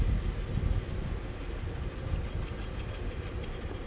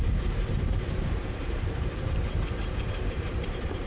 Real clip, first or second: first